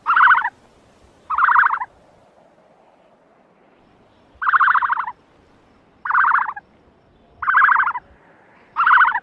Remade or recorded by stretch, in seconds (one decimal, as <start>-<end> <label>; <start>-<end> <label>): 0.0-9.2 recorded